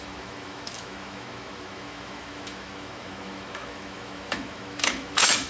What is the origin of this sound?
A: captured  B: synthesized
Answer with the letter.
B